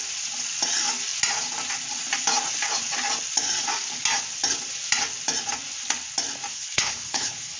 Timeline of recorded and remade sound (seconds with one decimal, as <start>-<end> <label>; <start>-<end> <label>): 0.0-6.5 recorded; 6.5-7.6 remade